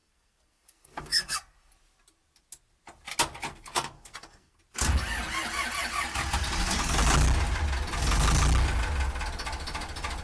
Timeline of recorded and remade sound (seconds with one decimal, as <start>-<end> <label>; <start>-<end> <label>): 0.0-1.7 remade; 1.7-3.5 recorded; 3.5-4.6 remade; 4.6-10.2 recorded